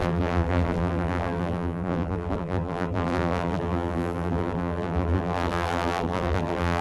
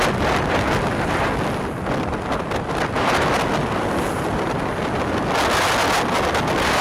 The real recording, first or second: second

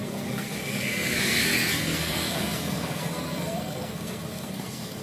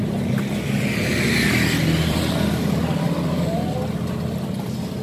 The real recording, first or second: second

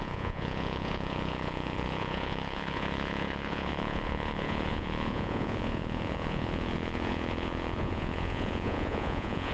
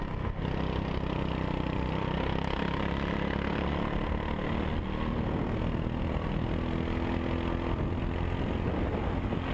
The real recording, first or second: second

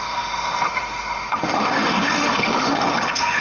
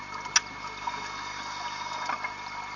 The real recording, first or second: second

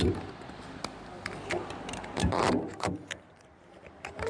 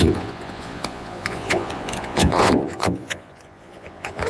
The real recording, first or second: first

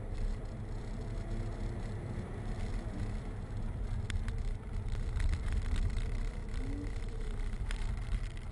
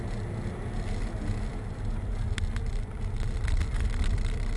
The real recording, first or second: second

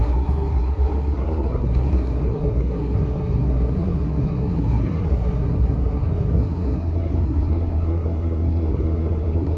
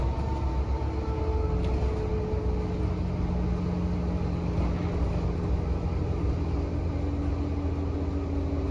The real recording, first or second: second